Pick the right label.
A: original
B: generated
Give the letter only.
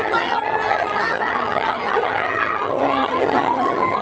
B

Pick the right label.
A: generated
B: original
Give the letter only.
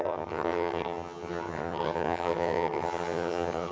A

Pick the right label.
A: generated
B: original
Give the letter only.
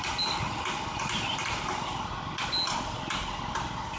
B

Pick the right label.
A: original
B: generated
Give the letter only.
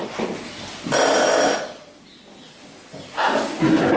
A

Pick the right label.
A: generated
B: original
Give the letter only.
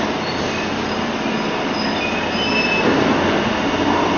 B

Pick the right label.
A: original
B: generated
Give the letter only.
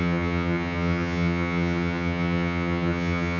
B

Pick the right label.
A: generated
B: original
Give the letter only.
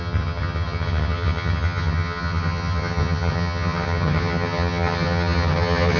A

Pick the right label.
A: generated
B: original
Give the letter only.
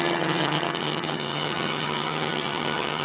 A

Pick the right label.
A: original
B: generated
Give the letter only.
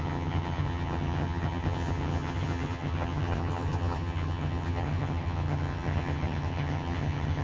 B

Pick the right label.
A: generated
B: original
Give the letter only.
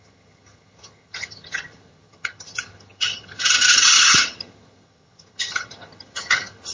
A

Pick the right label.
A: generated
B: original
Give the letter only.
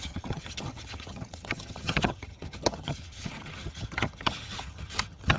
A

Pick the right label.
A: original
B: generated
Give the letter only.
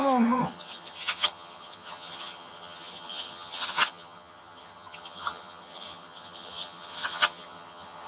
B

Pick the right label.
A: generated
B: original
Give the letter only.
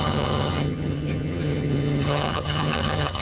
A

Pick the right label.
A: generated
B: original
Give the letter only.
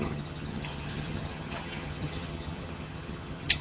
A